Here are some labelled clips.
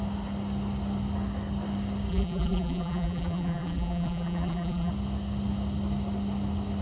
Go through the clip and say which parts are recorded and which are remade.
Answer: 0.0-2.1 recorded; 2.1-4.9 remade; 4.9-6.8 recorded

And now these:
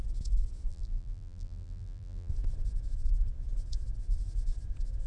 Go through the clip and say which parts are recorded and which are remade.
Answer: 0.0-0.7 recorded; 0.7-2.3 remade; 2.3-5.1 recorded

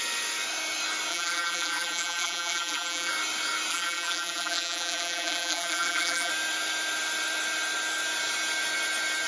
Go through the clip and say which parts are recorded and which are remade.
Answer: 0.0-1.1 recorded; 1.1-3.1 remade; 3.1-3.7 recorded; 3.7-6.3 remade; 6.3-9.3 recorded